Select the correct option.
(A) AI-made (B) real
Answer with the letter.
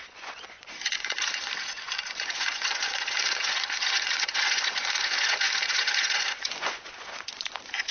A